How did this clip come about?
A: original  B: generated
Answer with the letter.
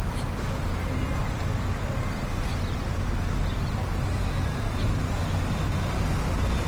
A